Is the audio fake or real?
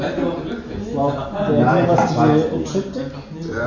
real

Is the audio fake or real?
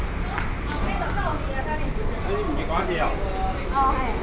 real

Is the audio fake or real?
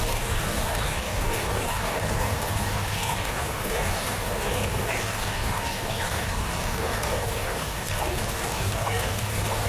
fake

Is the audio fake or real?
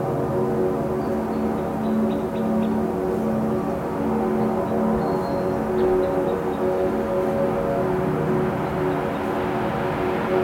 real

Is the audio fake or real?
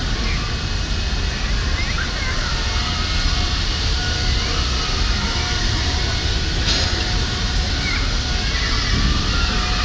real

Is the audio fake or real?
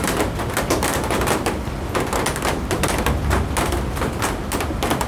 real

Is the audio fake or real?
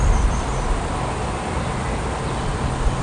real